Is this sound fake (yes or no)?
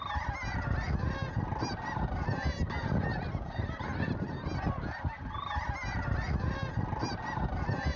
no